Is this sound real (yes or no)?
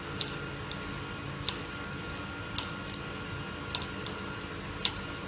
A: yes